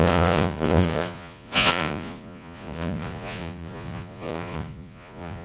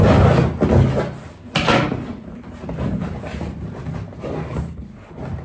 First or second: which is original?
second